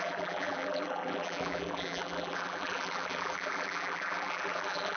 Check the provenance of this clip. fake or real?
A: fake